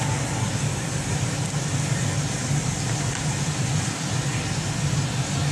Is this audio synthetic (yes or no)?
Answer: no